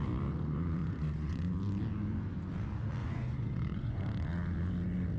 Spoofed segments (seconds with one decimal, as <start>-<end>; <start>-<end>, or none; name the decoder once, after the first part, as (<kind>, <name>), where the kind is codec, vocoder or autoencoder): 0.8-1.5 (vocoder, Vocos); 3.0-4.0